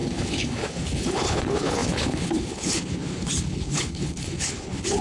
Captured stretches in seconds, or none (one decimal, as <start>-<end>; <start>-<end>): none